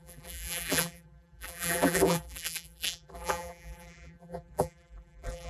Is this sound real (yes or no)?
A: no